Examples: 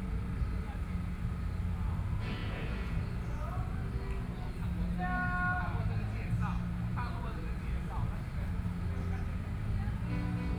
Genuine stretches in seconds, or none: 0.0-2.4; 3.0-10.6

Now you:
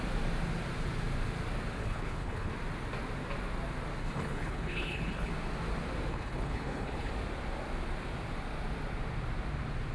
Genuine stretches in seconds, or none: 0.0-1.8; 2.5-4.0; 5.3-6.1; 7.1-9.9

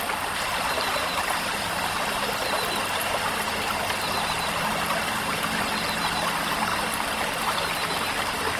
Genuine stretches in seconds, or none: 0.0-8.6

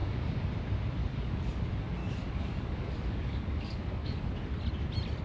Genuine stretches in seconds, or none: 0.5-1.0; 1.6-2.0; 4.3-5.2

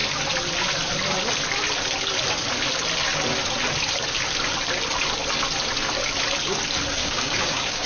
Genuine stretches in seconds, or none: 0.0-6.9